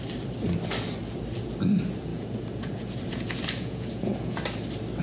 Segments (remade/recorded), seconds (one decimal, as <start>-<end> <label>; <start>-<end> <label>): 0.0-2.1 recorded; 2.1-4.4 remade; 4.4-5.0 recorded